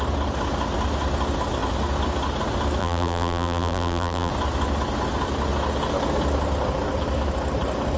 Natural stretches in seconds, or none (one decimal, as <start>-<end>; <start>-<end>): 0.0-2.8; 4.3-8.0